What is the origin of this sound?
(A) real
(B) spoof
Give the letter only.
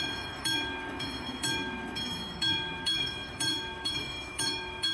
B